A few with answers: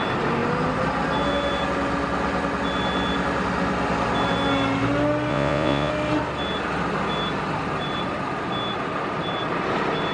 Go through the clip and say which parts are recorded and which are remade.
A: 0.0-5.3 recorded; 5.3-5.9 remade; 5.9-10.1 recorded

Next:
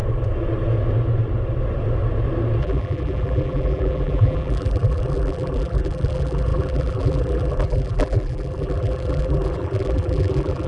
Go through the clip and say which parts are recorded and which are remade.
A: 0.0-2.6 recorded; 2.6-10.7 remade

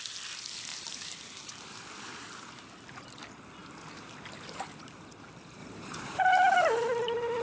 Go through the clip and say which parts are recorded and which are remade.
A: 0.0-0.7 recorded; 0.7-2.6 remade; 2.6-3.6 recorded; 3.6-4.6 remade; 4.6-5.6 recorded; 5.6-6.2 remade; 6.2-7.4 recorded

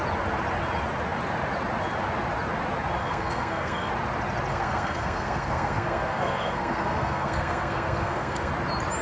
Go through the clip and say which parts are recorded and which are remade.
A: 0.0-3.0 recorded; 3.0-3.9 remade; 3.9-4.5 recorded; 4.5-8.5 remade; 8.5-9.0 recorded

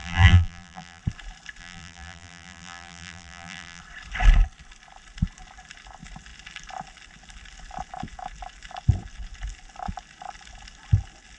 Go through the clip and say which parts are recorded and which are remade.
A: 0.0-1.0 remade; 1.0-1.6 recorded; 1.6-3.8 remade; 3.8-11.4 recorded